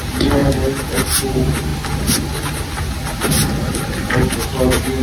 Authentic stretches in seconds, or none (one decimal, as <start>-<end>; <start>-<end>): 0.0-5.0